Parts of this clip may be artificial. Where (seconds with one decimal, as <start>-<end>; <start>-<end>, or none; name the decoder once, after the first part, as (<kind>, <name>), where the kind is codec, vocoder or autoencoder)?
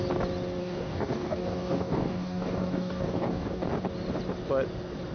0.6-3.7 (codec, DAC)